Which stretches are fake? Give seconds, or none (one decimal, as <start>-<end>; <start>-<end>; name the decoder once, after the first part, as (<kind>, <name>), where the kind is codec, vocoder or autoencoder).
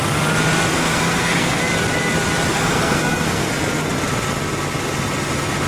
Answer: 0.7-1.6 (codec, SNAC); 2.5-3.5